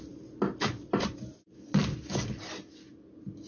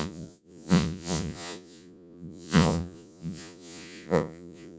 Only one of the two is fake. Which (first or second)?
second